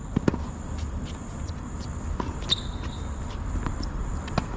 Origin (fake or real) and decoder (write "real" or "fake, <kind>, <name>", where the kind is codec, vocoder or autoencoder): real